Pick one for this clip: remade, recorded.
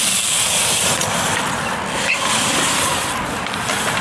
recorded